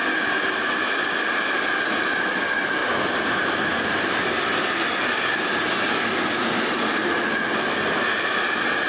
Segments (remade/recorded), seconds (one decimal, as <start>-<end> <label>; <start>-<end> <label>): 0.0-8.9 recorded